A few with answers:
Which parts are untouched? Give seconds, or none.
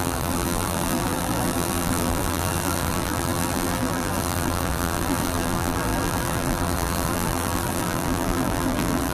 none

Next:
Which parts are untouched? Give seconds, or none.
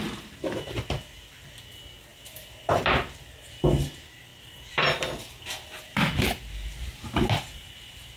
0.0-2.1; 3.1-4.3; 6.7-8.2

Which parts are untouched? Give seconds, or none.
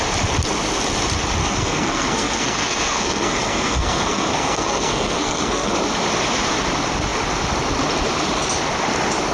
0.0-1.4; 5.7-9.3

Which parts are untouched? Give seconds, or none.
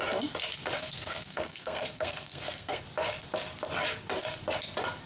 0.0-0.8; 2.8-5.1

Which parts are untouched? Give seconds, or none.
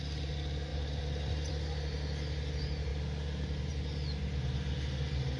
0.0-5.4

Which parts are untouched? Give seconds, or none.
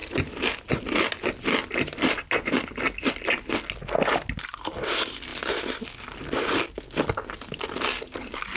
0.0-8.6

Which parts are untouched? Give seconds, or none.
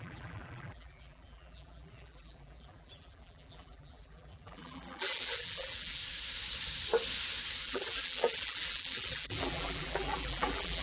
6.0-7.6